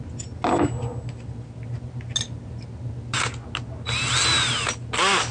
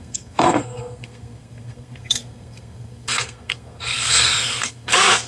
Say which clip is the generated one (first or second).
second